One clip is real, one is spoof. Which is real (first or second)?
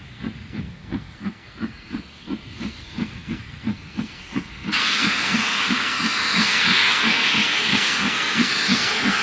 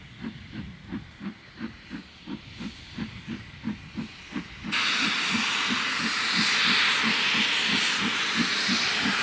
second